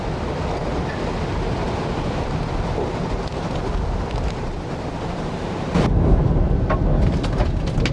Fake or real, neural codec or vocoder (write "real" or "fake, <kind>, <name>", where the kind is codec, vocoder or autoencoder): real